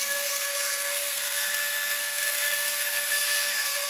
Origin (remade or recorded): remade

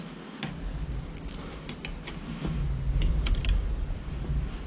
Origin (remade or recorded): recorded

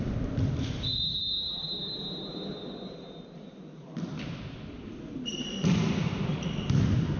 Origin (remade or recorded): recorded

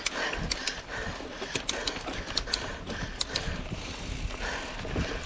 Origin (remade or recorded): recorded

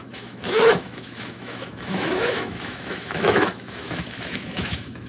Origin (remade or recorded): remade